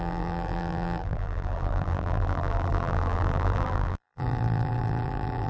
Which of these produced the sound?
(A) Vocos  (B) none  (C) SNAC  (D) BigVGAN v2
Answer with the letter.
D